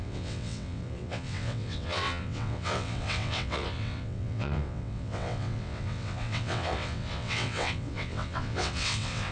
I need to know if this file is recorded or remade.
remade